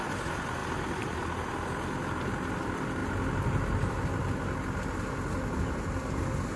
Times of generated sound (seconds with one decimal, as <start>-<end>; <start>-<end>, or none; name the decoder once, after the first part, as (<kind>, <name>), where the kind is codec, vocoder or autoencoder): none